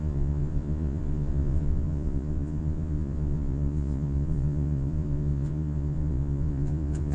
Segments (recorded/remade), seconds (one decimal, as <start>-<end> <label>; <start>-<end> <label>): 0.0-7.1 remade